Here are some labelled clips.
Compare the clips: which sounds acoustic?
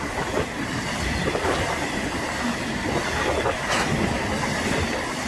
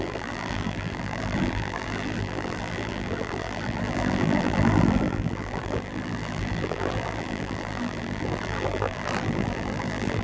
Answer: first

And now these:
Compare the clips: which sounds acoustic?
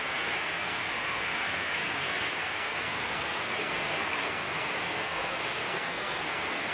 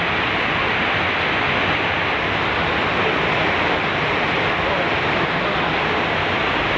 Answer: second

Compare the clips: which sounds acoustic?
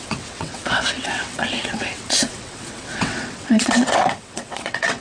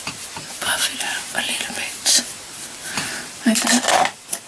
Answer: second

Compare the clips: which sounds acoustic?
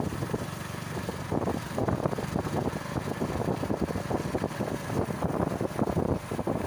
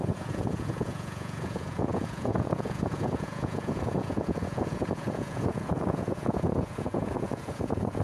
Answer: first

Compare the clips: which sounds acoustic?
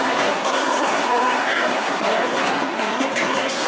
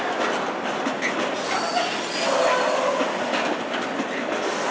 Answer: second